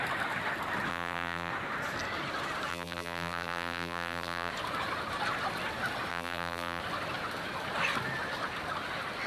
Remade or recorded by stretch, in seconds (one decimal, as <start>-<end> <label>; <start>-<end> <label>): 0.0-0.9 recorded; 0.9-1.5 remade; 1.5-2.7 recorded; 2.7-4.5 remade; 4.5-6.1 recorded; 6.1-6.8 remade; 6.8-9.3 recorded